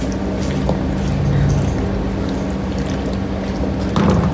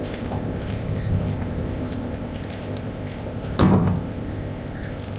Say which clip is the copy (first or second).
second